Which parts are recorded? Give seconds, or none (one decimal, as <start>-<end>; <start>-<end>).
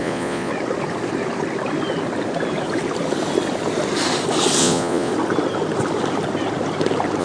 0.5-4.6; 5.1-7.2